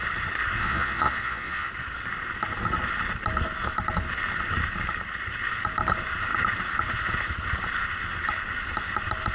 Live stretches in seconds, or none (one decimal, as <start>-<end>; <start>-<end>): 0.0-0.6; 1.7-9.3